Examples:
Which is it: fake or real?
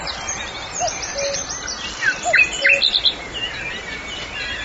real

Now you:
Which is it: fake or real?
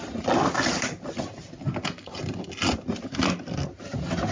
real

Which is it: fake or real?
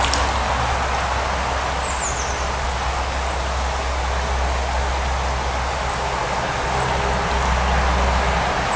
real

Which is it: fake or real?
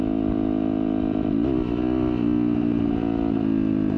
real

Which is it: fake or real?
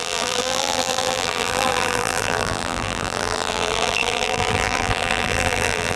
fake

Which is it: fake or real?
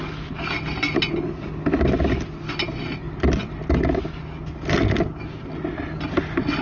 real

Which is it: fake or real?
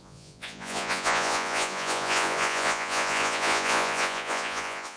fake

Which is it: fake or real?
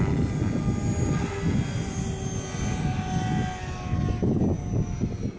real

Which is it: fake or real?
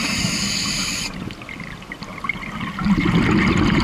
real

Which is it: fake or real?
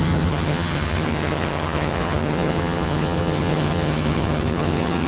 fake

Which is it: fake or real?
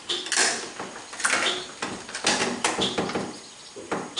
real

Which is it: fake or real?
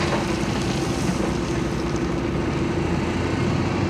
real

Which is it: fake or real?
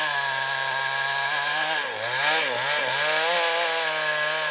real